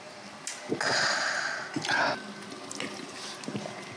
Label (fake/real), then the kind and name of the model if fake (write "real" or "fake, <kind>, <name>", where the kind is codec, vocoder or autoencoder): real